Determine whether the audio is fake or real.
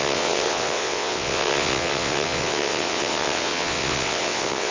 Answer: fake